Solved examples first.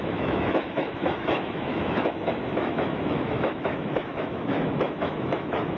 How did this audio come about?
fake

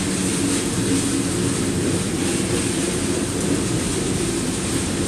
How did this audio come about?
real